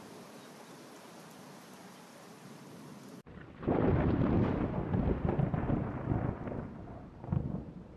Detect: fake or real real